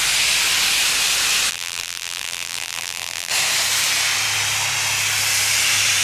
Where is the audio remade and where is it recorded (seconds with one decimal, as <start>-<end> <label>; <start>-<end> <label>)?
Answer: 0.0-1.5 recorded; 1.5-3.3 remade; 3.3-6.0 recorded